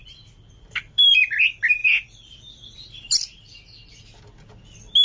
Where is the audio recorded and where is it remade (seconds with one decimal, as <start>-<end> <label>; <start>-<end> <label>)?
0.0-1.2 remade; 1.2-1.8 recorded; 1.8-3.9 remade; 3.9-5.0 recorded